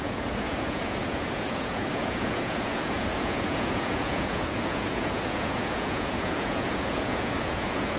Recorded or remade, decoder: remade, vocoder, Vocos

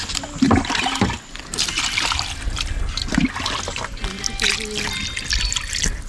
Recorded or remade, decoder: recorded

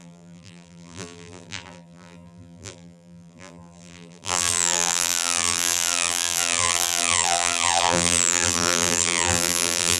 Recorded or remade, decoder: remade, vocoder, BigVGAN v2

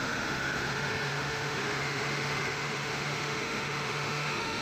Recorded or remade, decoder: remade, autoencoder, DAC-VAE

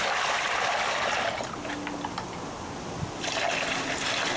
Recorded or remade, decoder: recorded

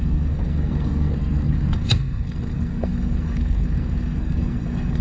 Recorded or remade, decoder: remade, codec, SNAC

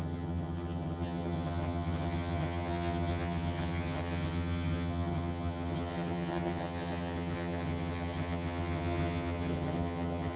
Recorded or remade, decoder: remade, vocoder, HiFi-GAN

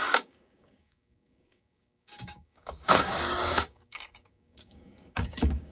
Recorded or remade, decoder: remade, codec, DAC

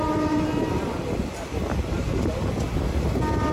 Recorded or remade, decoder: recorded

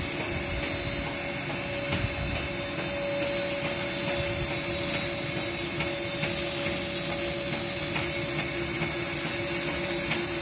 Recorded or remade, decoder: recorded